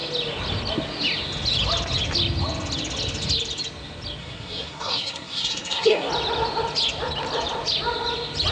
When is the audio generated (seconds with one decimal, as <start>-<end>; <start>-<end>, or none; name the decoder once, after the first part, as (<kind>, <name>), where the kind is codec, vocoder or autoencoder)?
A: 4.2-6.1 (codec, SNAC)